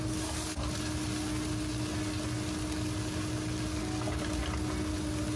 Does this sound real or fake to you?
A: real